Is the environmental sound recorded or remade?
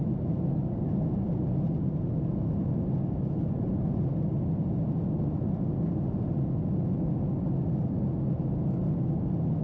recorded